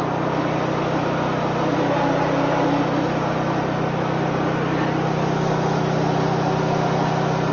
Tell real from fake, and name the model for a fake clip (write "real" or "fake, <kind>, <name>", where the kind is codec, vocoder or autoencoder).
real